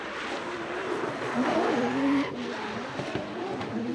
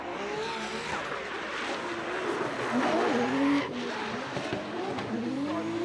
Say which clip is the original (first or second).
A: second